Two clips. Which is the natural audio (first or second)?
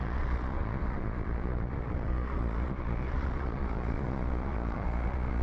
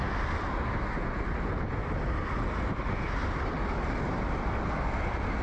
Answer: second